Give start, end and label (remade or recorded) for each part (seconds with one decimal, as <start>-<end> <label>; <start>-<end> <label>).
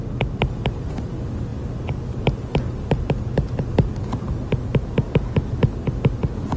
0.0-6.6 recorded